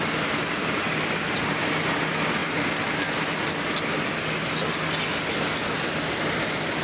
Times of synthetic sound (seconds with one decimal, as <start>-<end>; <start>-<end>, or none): none